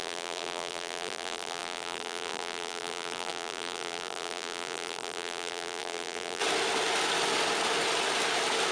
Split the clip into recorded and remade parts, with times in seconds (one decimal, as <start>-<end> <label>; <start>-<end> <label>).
0.0-6.4 remade; 6.4-8.7 recorded